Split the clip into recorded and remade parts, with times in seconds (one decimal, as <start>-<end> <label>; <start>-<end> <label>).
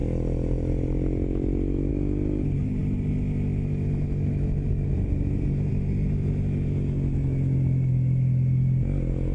0.0-9.3 recorded